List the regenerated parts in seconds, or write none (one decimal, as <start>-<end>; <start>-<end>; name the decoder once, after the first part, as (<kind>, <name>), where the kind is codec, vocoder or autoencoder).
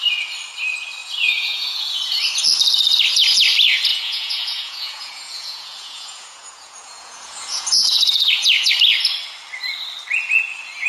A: 1.0-1.9 (vocoder, Vocos); 3.9-8.7